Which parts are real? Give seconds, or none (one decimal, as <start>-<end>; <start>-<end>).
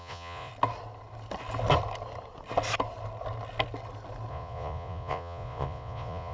0.5-4.3